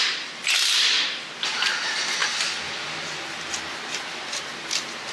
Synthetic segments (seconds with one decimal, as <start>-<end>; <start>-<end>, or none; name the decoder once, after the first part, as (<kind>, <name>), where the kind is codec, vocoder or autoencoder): none